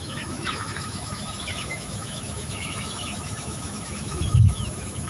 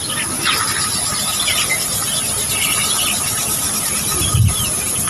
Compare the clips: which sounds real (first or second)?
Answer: second